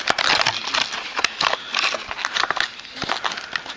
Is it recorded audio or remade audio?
recorded